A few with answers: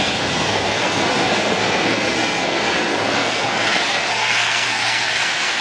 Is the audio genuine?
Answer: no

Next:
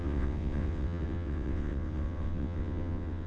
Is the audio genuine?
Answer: no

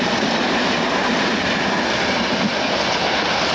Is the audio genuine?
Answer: yes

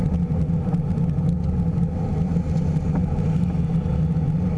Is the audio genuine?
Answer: yes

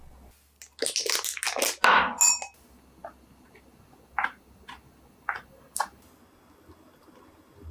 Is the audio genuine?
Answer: yes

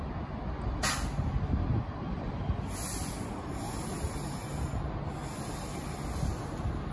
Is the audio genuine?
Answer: yes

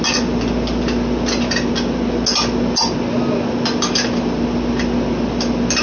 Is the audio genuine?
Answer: yes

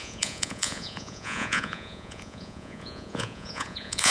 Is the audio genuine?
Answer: no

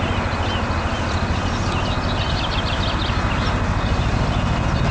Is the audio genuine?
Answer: yes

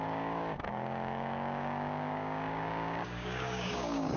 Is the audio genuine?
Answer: no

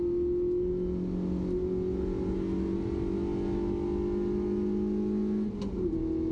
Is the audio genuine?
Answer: yes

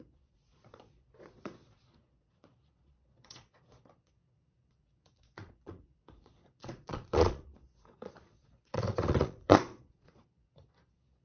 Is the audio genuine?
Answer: no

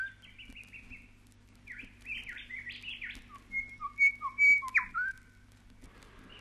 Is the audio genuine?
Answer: yes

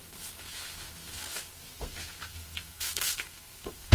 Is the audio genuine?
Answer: no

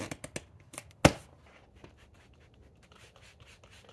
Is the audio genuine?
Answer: yes